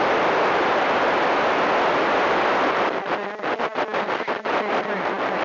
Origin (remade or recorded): recorded